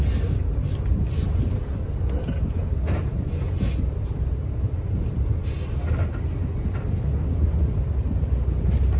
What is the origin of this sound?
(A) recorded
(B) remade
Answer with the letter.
A